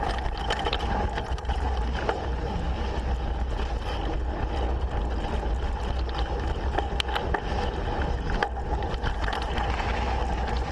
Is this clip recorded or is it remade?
recorded